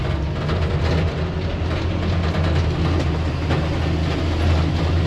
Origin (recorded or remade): recorded